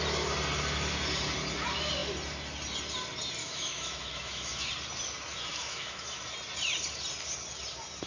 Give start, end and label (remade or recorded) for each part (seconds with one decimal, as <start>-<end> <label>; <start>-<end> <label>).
0.0-3.4 recorded; 3.4-4.7 remade; 4.7-5.3 recorded; 5.3-6.2 remade; 6.2-8.1 recorded